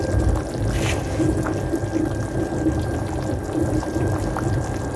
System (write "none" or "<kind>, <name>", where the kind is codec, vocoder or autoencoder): none